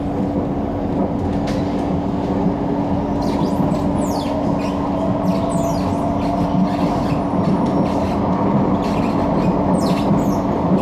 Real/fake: real